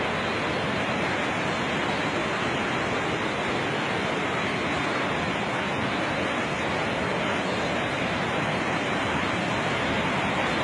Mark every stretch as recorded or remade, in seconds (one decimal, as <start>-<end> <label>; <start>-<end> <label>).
0.0-10.6 recorded